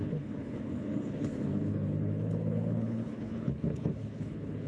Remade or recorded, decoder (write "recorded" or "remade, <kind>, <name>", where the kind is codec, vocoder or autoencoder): remade, codec, HILCodec